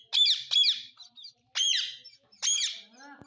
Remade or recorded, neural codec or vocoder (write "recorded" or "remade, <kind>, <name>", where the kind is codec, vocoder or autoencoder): recorded